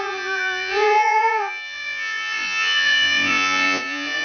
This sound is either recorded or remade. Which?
remade